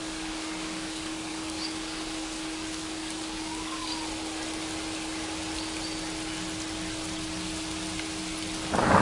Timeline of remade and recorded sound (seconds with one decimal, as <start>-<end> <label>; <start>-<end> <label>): 0.0-3.9 remade; 3.9-9.0 recorded